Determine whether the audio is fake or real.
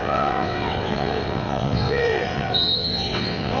fake